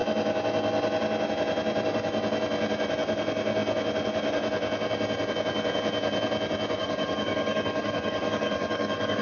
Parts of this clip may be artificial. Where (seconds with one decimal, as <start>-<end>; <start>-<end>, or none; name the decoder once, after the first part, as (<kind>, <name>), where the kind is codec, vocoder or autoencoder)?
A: 6.8-9.2 (codec, DAC)